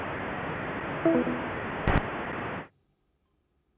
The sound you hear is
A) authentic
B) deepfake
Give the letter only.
A